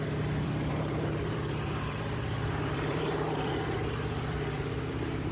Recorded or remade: remade